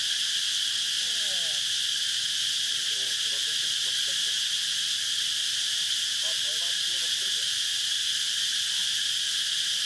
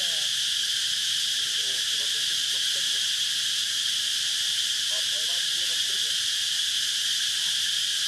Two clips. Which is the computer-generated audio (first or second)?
second